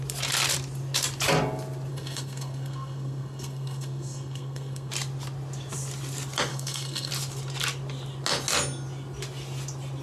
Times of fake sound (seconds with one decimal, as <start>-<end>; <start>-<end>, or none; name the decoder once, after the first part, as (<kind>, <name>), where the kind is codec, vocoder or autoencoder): 1.9-4.9 (codec, SNAC); 6.5-7.1